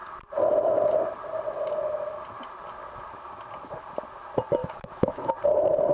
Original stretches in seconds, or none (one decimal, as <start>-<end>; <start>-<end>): 0.0-4.6; 5.3-5.9